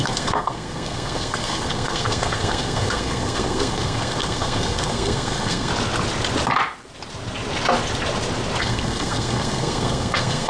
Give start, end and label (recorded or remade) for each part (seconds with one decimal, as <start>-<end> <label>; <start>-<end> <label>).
0.0-5.7 remade; 5.7-8.6 recorded; 8.6-10.5 remade